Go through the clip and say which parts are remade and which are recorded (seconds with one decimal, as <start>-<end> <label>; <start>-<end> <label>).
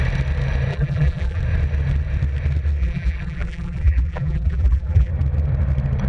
0.0-0.7 recorded; 0.7-1.4 remade; 1.4-2.8 recorded; 2.8-5.1 remade; 5.1-6.1 recorded